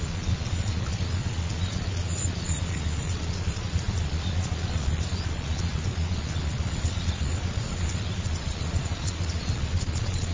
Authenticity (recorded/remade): remade